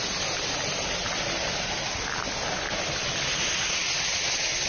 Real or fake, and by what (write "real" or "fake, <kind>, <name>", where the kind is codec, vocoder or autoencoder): real